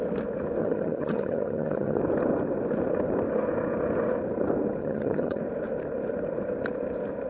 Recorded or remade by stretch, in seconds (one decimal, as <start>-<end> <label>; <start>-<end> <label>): 0.0-0.6 recorded; 0.6-2.0 remade; 2.0-4.8 recorded; 4.8-5.4 remade; 5.4-7.3 recorded